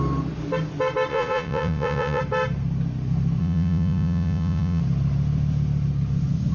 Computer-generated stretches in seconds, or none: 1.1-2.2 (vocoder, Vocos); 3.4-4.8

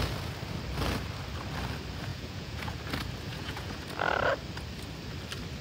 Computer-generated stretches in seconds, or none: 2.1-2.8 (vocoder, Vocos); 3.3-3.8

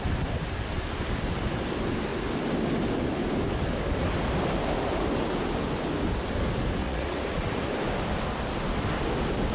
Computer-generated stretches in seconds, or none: 6.8-7.6 (vocoder, Vocos)

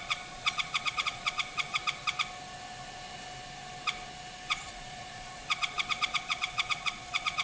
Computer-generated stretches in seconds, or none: 0.0-1.8 (vocoder, Vocos); 4.5-7.4

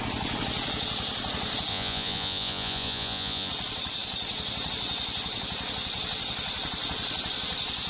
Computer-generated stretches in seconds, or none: 1.7-3.5 (vocoder, Vocos)